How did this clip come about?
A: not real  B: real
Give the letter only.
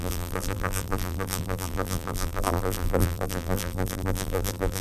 A